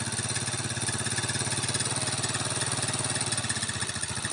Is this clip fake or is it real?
real